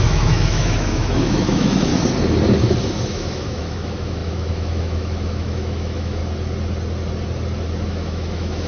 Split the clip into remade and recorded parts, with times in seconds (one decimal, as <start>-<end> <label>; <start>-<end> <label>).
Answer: 0.0-1.9 remade; 1.9-2.9 recorded; 2.9-6.2 remade; 6.2-7.9 recorded; 7.9-8.7 remade